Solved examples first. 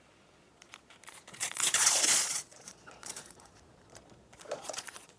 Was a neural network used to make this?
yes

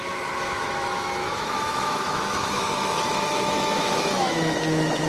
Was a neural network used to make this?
yes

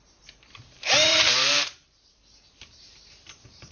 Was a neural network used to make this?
yes